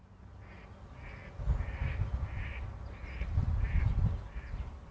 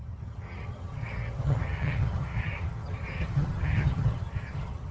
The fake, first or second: second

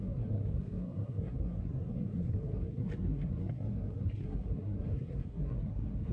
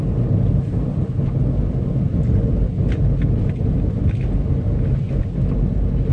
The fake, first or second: first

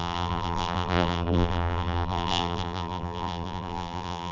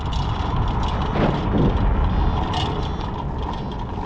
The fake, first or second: first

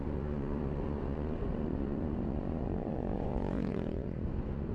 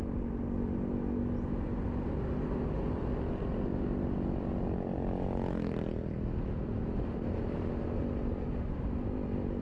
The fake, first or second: first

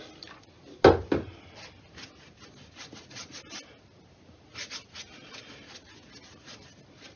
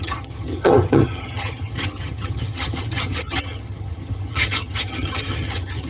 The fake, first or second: second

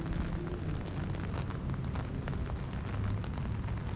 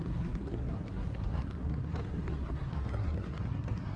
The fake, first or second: second